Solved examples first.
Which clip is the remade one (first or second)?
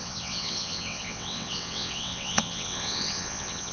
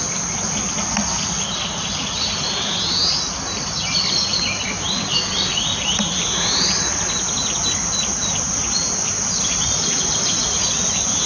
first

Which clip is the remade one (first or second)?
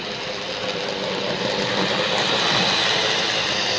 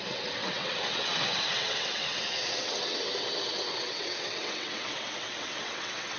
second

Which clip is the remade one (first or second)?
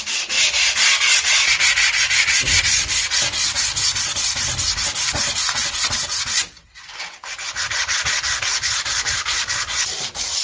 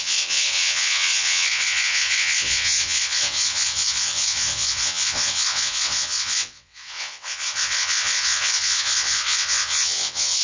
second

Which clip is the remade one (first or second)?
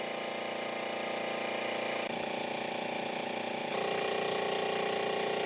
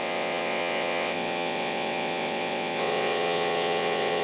second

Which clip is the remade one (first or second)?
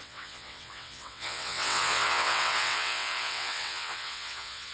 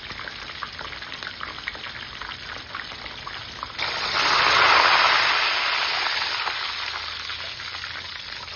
first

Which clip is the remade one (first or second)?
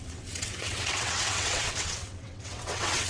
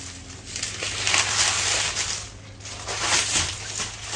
first